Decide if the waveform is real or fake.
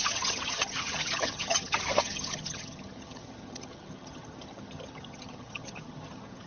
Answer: fake